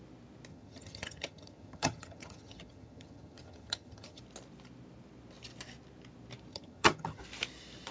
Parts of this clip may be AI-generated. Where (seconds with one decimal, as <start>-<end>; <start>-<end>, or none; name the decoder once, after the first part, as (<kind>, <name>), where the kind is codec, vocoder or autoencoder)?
0.5-4.2 (vocoder, HiFi-GAN); 6.5-7.2